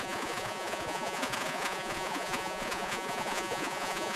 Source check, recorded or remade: remade